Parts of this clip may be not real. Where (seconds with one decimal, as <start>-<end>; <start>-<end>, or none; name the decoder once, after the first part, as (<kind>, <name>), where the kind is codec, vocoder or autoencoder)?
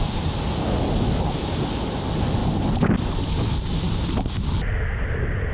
none